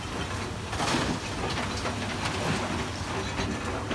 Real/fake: real